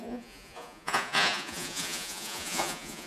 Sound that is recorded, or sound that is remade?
remade